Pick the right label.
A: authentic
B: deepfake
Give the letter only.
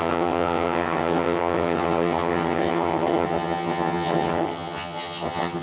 B